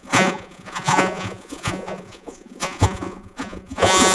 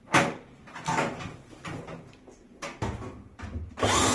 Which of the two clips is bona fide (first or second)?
second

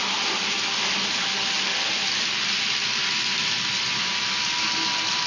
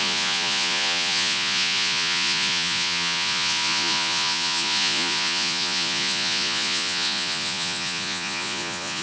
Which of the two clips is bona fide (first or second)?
first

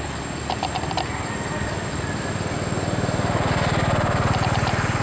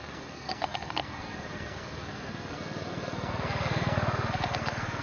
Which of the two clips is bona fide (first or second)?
first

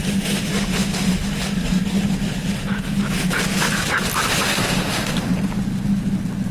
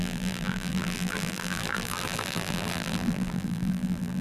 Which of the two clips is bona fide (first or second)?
first